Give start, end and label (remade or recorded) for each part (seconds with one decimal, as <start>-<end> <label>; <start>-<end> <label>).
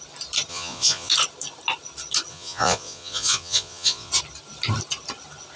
0.0-0.5 recorded; 0.5-1.1 remade; 1.1-2.3 recorded; 2.3-4.1 remade; 4.1-5.6 recorded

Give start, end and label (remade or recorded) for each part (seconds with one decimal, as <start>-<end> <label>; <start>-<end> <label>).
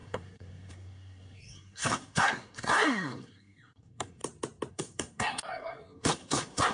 0.0-4.2 remade; 4.2-4.7 recorded; 4.7-6.7 remade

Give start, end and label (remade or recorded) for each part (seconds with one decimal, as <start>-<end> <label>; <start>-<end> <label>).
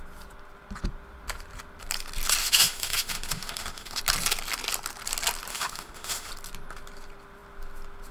0.0-2.4 recorded; 2.4-4.0 remade; 4.0-5.5 recorded; 5.5-6.3 remade; 6.3-8.1 recorded